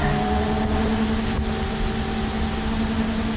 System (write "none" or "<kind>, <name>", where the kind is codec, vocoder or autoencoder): none